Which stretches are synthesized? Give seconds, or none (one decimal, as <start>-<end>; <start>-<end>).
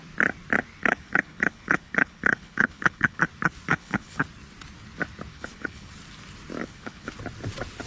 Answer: 0.8-3.2; 3.7-4.2; 5.3-5.9; 6.6-7.1